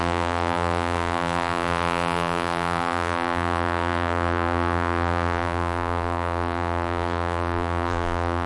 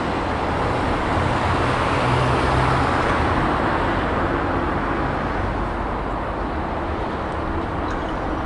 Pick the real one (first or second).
second